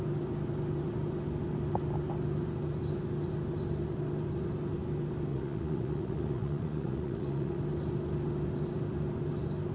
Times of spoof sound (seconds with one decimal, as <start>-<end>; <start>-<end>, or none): 5.3-7.6